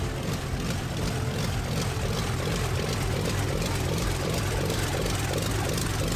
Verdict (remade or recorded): recorded